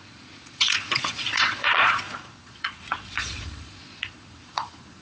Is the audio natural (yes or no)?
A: no